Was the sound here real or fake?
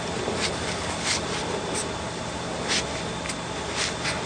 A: real